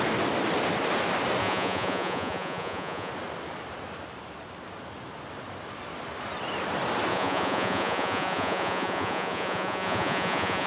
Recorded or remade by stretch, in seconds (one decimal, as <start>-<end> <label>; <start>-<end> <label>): 0.0-1.4 recorded; 1.4-3.1 remade; 3.1-7.1 recorded; 7.1-10.7 remade